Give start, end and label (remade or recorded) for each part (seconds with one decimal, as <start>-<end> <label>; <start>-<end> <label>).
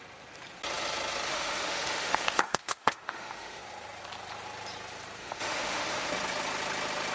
0.0-1.3 recorded; 1.3-3.6 remade; 3.6-5.2 recorded; 5.2-6.1 remade; 6.1-7.1 recorded